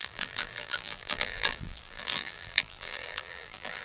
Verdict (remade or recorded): remade